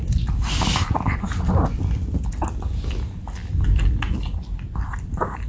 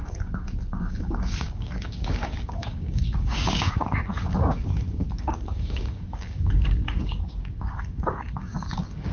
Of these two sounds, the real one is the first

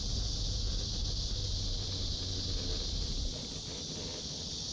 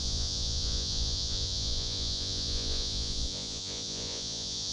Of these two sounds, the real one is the first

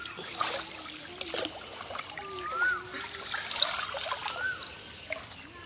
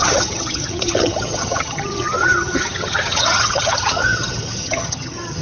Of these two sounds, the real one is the first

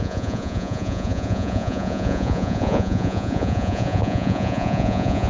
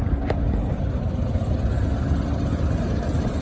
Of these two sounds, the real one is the second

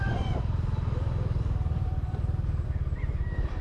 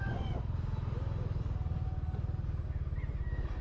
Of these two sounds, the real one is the second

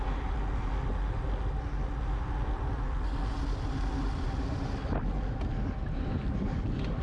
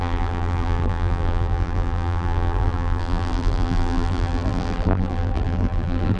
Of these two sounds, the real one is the first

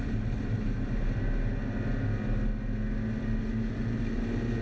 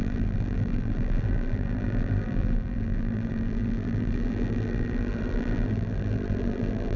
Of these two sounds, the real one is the first